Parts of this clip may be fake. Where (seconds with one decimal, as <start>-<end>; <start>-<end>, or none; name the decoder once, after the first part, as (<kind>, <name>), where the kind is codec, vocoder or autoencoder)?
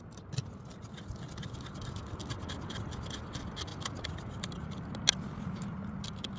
none